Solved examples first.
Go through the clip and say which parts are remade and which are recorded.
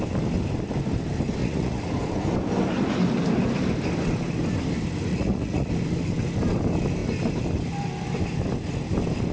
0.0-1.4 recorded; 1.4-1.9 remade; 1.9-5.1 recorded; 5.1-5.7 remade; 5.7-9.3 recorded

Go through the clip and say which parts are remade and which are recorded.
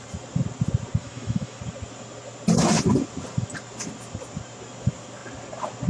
0.0-1.0 recorded; 1.0-1.6 remade; 1.6-5.9 recorded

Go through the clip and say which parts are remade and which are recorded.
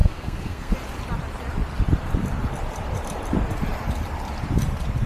0.0-0.7 remade; 0.7-5.1 recorded